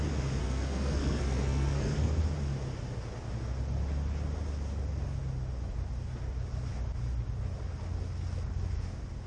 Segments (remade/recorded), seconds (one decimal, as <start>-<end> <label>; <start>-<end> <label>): 0.0-0.4 recorded; 0.4-2.1 remade; 2.1-9.3 recorded